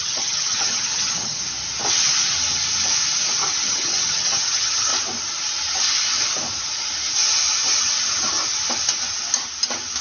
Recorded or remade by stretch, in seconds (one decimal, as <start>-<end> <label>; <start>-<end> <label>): 0.0-1.4 remade; 1.4-3.7 recorded; 3.7-4.9 remade; 4.9-10.0 recorded